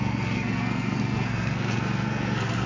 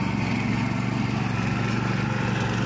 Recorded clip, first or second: second